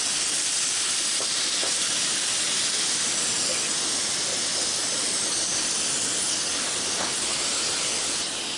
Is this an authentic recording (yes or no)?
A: yes